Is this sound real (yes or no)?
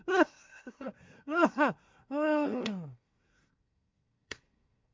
no